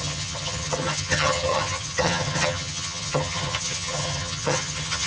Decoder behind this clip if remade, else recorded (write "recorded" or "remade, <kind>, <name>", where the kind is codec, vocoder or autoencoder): remade, vocoder, HiFi-GAN